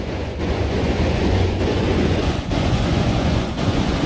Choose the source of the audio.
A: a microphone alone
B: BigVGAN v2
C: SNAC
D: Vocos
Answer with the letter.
D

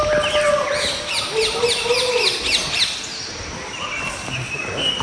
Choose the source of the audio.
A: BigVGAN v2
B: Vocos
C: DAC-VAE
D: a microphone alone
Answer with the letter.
D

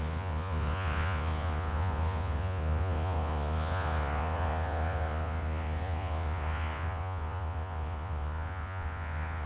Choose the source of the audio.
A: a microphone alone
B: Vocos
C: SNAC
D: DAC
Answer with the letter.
B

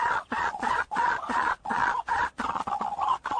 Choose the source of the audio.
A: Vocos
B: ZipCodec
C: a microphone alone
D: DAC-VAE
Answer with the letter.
A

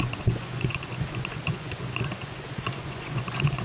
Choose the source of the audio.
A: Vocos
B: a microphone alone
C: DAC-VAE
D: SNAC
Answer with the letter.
A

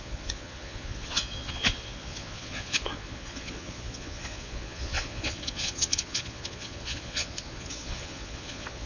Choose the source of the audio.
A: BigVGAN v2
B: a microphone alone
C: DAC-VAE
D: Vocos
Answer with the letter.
D